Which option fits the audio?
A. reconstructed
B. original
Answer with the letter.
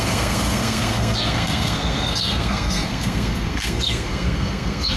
A